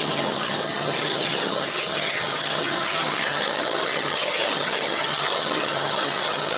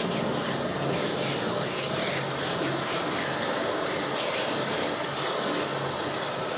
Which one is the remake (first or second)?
first